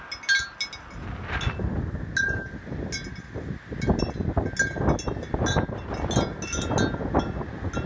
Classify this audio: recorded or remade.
recorded